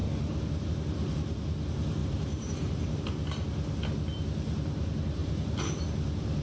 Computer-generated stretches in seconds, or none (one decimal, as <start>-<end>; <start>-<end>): 2.0-3.0; 5.2-5.8